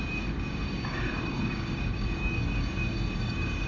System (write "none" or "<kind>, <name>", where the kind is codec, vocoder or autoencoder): codec, DAC